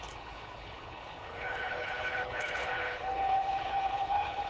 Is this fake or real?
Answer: fake